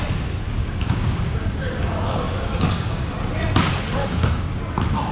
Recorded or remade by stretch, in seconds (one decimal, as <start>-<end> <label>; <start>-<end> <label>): 0.0-0.6 recorded; 0.6-3.1 remade; 3.1-4.0 recorded; 4.0-4.5 remade; 4.5-5.1 recorded